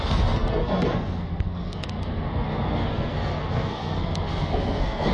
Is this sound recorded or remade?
remade